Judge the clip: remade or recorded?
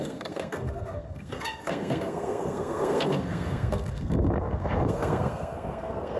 remade